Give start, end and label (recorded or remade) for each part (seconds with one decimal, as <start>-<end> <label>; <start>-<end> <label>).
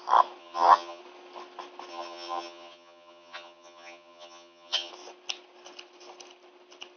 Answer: 0.0-0.4 recorded; 0.4-1.0 remade; 1.0-1.9 recorded; 1.9-4.9 remade; 4.9-7.0 recorded